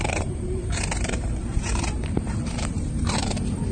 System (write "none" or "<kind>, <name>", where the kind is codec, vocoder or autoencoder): vocoder, BigVGAN v2